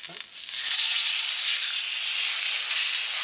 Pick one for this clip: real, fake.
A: real